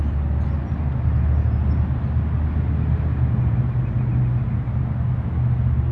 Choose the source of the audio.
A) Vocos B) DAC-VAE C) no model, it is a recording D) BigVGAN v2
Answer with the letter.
C